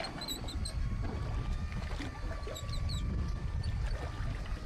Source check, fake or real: real